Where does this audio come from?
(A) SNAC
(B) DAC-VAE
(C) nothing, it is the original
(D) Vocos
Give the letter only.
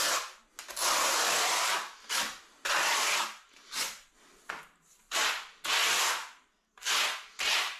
C